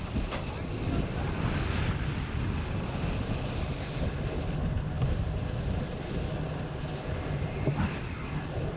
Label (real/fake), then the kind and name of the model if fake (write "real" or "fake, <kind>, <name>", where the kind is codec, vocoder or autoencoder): real